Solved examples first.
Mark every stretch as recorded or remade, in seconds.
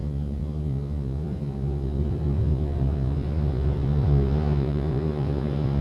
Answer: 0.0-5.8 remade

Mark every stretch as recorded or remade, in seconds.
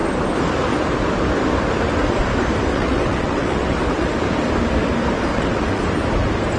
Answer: 0.0-2.7 recorded; 2.7-4.1 remade; 4.1-5.3 recorded; 5.3-5.8 remade; 5.8-6.6 recorded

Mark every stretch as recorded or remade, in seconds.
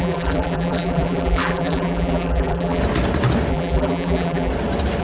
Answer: 0.0-2.8 remade; 2.8-3.5 recorded; 3.5-4.5 remade; 4.5-5.0 recorded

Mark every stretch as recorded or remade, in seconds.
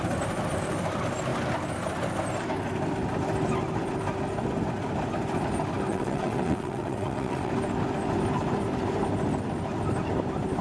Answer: 0.0-5.9 recorded; 5.9-7.5 remade; 7.5-10.6 recorded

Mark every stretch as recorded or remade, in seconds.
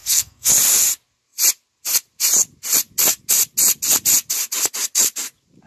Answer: 0.0-0.5 remade; 0.5-5.7 recorded